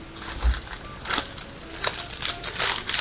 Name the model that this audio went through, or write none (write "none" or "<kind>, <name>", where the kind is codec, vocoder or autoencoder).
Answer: none